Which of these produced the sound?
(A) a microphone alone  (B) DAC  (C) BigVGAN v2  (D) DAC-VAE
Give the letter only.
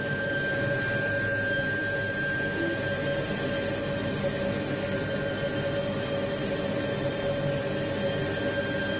A